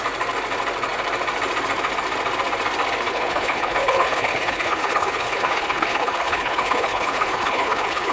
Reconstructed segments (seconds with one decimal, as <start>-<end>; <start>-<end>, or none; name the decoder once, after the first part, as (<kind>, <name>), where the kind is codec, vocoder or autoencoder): 3.1-8.1 (codec, HILCodec)